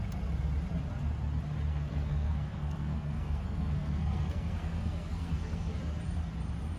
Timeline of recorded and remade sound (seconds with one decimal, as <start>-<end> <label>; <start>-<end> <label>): 0.0-1.7 recorded; 1.7-5.8 remade; 5.8-6.8 recorded